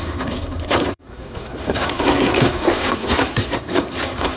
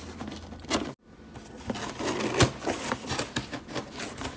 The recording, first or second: second